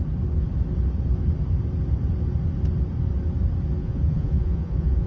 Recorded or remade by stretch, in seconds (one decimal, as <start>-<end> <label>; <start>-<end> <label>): 0.0-3.8 recorded; 3.8-5.1 remade